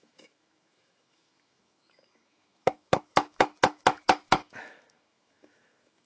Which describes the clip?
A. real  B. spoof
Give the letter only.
B